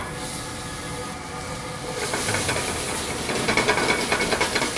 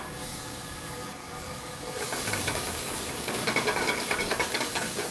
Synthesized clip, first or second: second